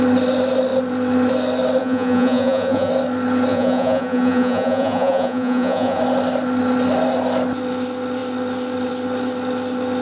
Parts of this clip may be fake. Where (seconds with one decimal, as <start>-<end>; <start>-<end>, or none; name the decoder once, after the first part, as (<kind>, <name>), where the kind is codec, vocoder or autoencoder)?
1.8-2.9 (vocoder, Vocos); 3.5-6.0